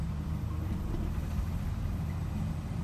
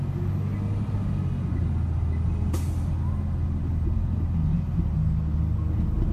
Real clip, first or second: second